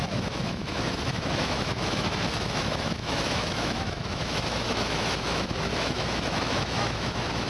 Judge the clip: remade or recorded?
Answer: remade